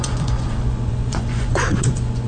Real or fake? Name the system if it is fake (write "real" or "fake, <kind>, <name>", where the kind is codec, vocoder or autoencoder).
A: fake, vocoder, Vocos